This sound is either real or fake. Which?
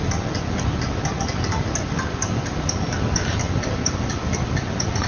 real